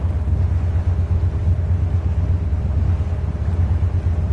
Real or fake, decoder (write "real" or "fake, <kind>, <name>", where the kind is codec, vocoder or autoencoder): real